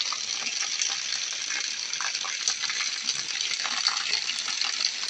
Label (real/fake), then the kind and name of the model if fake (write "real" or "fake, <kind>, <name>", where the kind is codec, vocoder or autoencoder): real